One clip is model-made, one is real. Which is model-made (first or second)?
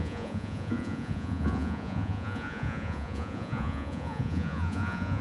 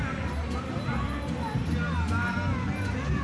first